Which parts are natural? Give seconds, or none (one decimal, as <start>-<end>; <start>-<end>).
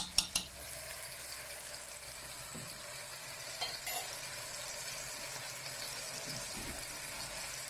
0.0-7.7